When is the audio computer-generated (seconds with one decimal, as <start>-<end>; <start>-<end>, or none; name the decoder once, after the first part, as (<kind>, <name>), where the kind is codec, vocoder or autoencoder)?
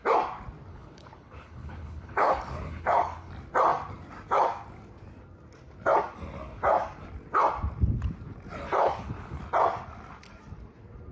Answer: 0.7-3.3 (codec, HILCodec); 8.8-9.4